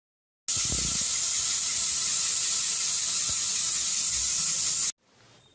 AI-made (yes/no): no